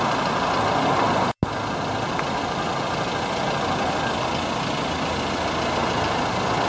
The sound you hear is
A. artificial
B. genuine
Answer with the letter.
B